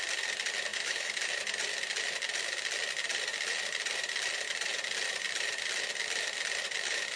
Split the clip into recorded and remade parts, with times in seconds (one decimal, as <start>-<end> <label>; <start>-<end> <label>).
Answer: 0.0-0.7 recorded; 0.7-1.2 remade; 1.2-7.2 recorded